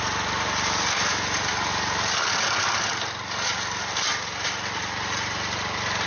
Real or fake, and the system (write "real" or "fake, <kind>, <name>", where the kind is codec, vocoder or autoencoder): real